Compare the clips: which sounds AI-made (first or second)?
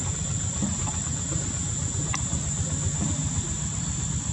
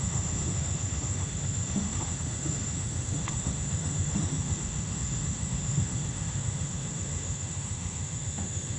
second